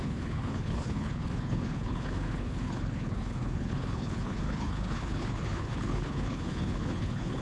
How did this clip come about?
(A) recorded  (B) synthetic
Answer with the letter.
B